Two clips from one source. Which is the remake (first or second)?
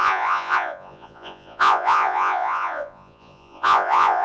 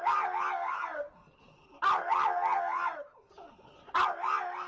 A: first